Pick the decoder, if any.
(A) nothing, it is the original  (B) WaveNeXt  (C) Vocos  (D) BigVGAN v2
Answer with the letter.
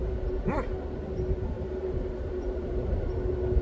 A